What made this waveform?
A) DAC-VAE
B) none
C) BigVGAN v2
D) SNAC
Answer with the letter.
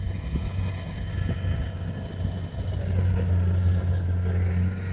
B